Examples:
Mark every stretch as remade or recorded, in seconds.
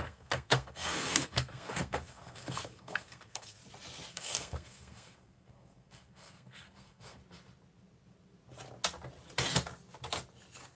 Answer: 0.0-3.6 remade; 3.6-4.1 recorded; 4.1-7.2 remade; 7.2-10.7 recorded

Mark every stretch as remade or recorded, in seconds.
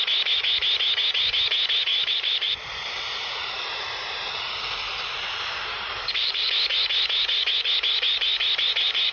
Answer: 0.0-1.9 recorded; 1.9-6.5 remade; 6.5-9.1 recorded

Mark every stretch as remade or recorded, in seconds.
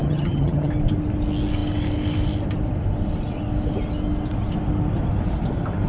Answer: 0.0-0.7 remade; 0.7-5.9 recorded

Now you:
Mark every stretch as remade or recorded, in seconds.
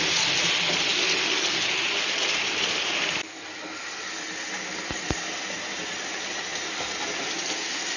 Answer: 0.0-8.0 recorded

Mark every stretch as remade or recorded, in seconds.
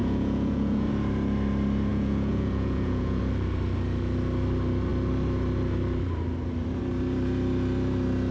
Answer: 0.0-0.9 remade; 0.9-1.9 recorded; 1.9-3.2 remade; 3.2-8.3 recorded